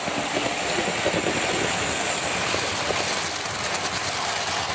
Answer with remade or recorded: recorded